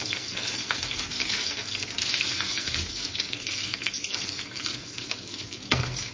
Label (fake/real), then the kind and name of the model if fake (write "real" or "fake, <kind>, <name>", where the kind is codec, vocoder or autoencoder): fake, codec, SNAC